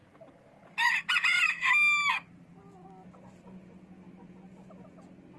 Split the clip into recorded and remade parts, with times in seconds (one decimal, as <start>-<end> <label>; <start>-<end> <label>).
0.0-5.4 recorded